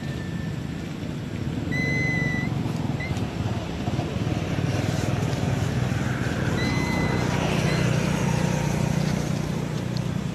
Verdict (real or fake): real